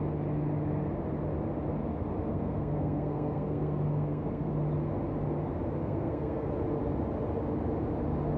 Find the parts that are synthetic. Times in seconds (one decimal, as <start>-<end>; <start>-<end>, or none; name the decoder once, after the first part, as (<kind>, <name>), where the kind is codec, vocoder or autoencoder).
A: 2.3-4.5 (codec, SNAC); 5.8-6.5